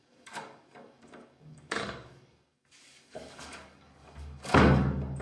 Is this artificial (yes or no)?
yes